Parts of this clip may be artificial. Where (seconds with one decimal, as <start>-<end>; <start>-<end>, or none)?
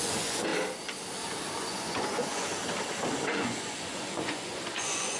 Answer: 0.0-0.5; 1.6-2.5; 3.3-5.2